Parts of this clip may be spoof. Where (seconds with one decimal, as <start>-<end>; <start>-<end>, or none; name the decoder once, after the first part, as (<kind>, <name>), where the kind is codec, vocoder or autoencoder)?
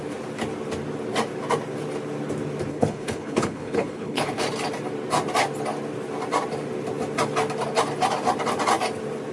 2.7-4.4 (codec, HILCodec)